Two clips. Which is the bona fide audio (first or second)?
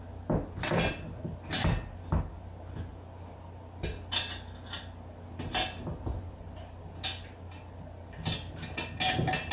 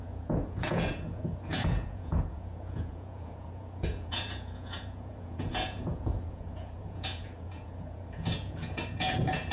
first